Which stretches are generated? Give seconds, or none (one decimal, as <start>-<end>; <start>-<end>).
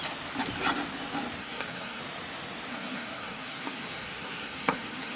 1.4-2.0; 2.7-5.2